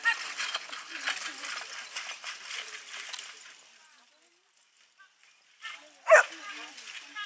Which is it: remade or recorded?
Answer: recorded